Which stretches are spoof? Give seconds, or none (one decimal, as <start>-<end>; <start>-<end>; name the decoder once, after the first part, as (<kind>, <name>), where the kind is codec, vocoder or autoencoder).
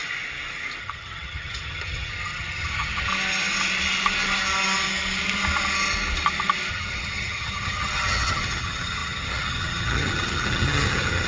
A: 0.8-3.1 (vocoder, HiFi-GAN); 6.7-11.3